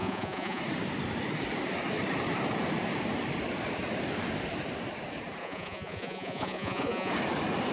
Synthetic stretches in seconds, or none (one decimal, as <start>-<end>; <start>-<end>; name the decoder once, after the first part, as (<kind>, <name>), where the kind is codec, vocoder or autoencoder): 0.0-0.6 (vocoder, Vocos); 5.4-7.1